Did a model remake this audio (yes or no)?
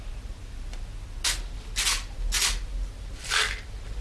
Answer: no